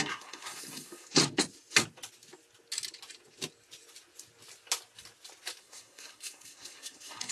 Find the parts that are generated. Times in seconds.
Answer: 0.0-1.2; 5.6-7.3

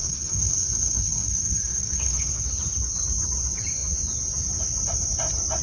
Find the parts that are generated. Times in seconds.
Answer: 0.0-2.3

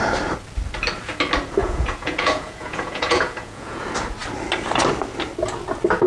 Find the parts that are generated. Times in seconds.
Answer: 1.6-3.8

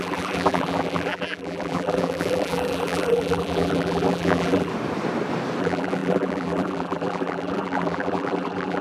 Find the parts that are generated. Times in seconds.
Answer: 0.0-4.7; 5.6-8.8

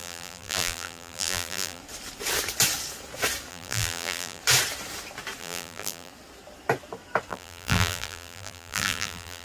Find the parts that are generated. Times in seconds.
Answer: 0.0-1.8; 3.5-4.4; 5.4-6.1; 7.3-9.4

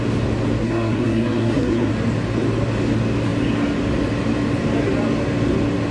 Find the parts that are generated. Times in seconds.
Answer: 0.6-1.9

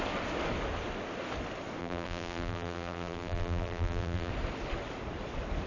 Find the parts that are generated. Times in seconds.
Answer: 1.8-4.3

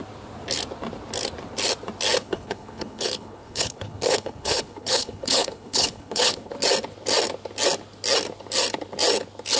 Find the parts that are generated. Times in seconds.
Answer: 2.2-6.5